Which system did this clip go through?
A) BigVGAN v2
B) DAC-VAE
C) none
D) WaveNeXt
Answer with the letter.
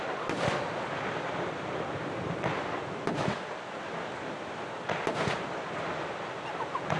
A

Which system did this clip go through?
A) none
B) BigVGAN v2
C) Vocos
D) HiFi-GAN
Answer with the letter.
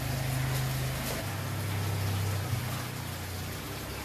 A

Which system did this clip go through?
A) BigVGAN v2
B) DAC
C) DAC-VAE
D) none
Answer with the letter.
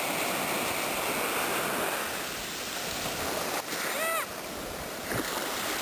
D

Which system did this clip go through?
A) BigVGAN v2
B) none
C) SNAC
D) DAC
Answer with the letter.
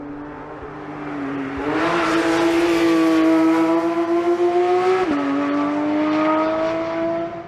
B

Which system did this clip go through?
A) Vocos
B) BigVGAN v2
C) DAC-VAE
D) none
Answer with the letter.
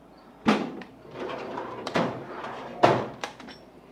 B